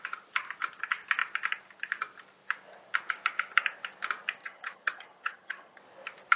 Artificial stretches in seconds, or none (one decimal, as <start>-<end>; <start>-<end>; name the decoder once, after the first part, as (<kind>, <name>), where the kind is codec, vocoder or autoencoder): 4.4-5.8 (vocoder, HiFi-GAN)